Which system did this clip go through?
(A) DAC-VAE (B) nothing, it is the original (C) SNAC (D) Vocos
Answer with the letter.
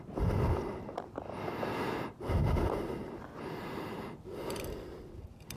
B